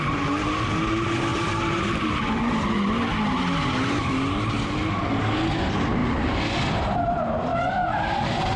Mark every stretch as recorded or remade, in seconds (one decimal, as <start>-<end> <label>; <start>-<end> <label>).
0.0-8.6 recorded